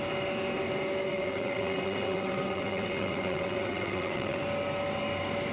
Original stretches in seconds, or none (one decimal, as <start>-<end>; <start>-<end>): 0.0-1.1; 4.4-5.5